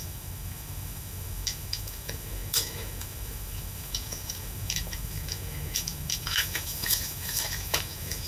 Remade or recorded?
remade